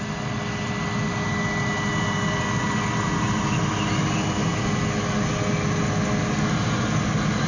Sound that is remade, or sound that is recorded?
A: recorded